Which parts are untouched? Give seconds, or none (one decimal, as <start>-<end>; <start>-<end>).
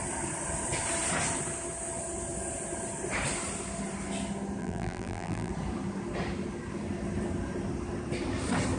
0.0-4.6; 5.5-8.8